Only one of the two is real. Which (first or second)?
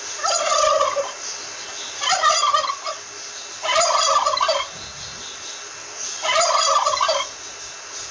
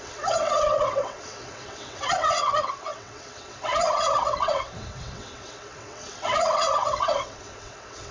first